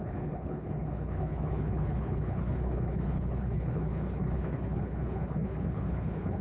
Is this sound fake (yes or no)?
yes